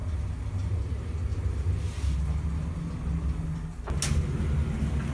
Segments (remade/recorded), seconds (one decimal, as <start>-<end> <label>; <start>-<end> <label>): 0.0-5.1 recorded